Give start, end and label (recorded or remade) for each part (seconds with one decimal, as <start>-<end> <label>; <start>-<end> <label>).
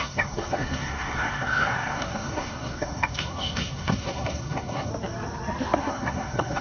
0.0-4.9 remade; 4.9-5.8 recorded; 5.8-6.6 remade